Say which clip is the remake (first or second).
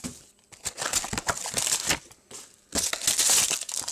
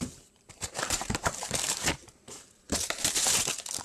second